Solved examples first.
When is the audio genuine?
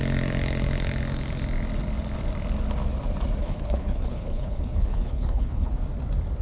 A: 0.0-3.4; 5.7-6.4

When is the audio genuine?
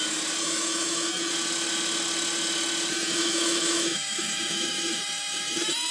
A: 0.0-0.4; 1.3-2.9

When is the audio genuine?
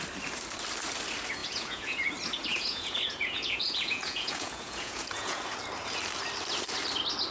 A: 0.0-1.4; 2.1-2.5; 5.4-7.3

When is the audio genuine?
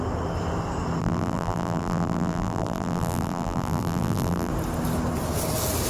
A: 0.0-1.0; 4.5-5.9